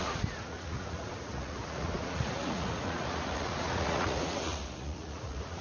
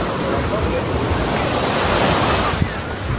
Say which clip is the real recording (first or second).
second